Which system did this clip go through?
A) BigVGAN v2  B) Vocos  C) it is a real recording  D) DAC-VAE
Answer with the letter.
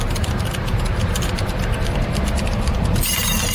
A